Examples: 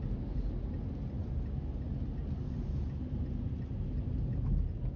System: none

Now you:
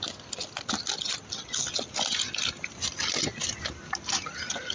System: none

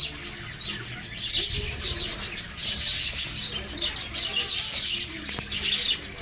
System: none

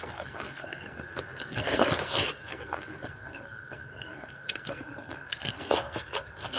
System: codec, SNAC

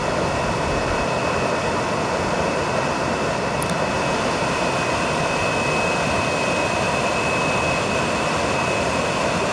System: none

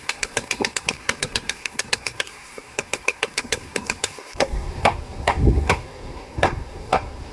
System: codec, SNAC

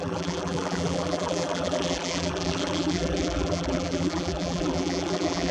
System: vocoder, BigVGAN v2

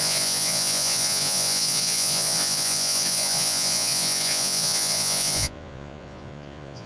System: vocoder, Vocos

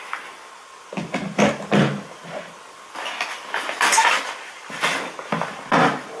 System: none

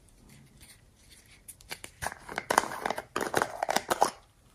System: none